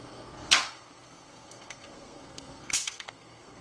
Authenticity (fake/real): fake